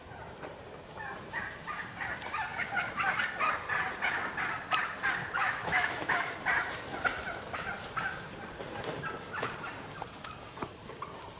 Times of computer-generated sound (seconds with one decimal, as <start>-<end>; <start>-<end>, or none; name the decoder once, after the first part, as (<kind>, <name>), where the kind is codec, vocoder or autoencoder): 5.4-6.3 (autoencoder, DAC-VAE)